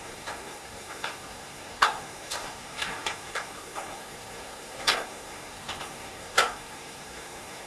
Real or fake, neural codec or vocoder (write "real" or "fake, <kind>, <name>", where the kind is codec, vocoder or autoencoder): fake, codec, SNAC